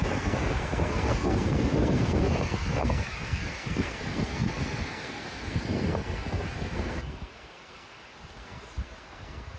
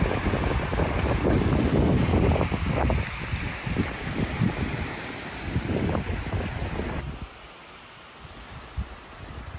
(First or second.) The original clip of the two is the second